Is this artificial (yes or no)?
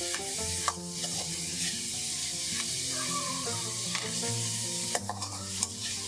yes